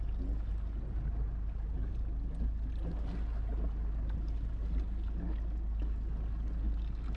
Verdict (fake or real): real